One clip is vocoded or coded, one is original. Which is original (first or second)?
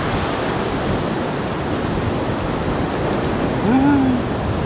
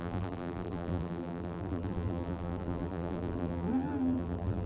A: first